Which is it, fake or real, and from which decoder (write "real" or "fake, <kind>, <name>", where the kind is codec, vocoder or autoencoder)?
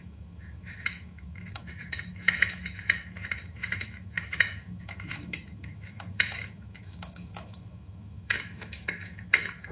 fake, autoencoder, DAC-VAE